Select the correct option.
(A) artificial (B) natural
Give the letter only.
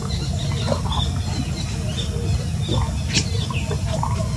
B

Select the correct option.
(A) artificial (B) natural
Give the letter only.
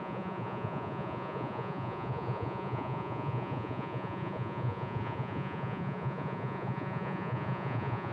A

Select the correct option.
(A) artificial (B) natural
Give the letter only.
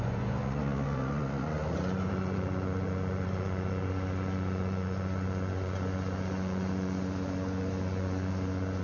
A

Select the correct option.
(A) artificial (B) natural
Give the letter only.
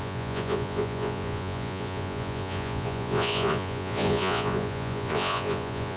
A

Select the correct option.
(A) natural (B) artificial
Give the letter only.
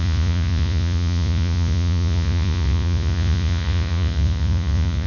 B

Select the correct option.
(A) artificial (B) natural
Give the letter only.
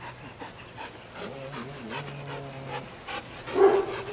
B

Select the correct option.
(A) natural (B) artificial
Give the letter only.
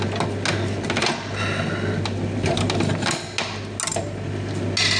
A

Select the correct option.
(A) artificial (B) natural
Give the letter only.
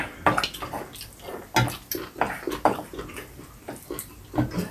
B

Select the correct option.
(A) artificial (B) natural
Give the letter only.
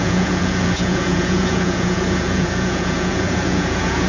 A